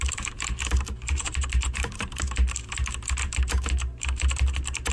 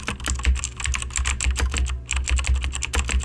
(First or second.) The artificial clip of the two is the first